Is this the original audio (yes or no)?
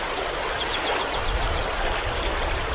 yes